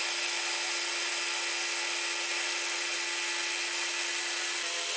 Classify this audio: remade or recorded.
recorded